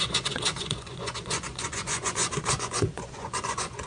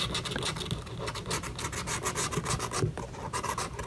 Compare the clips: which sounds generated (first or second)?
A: first